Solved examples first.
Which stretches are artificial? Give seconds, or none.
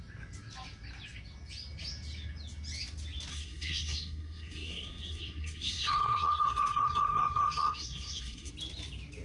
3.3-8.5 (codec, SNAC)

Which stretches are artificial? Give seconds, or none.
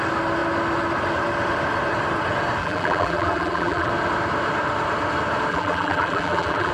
2.6-3.9 (vocoder, BigVGAN v2); 5.5-6.7